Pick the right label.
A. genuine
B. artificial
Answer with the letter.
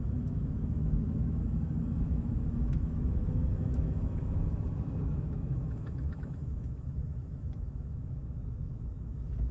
B